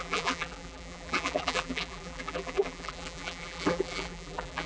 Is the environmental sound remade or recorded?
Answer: remade